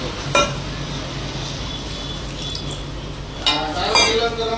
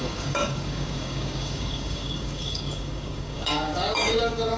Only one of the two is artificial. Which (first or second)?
second